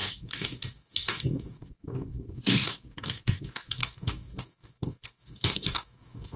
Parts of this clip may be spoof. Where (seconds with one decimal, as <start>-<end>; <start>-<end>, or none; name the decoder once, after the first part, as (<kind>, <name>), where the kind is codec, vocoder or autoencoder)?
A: 0.0-6.4 (codec, DAC)